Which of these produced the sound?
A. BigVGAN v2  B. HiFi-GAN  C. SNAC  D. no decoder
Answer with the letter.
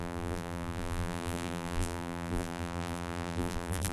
A